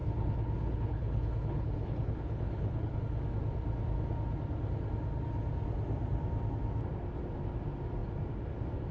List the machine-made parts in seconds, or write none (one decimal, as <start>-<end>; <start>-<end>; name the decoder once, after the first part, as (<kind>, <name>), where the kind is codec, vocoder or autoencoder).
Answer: 0.0-3.0 (codec, HILCodec)